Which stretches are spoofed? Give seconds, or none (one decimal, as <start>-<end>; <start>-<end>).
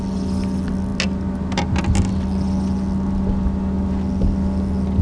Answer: none